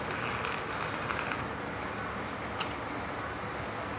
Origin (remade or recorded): recorded